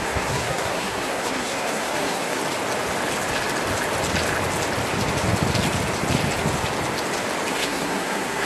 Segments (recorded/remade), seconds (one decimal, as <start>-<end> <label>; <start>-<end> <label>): 0.0-2.4 remade; 2.4-7.5 recorded; 7.5-8.5 remade